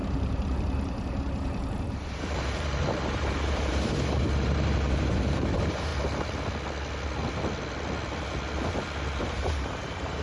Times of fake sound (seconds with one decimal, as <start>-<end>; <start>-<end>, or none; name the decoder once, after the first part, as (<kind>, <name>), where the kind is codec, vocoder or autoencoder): 0.0-5.9 (vocoder, BigVGAN v2); 9.2-10.2